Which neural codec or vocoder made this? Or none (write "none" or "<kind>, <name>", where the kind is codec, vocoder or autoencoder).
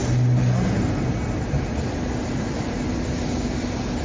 none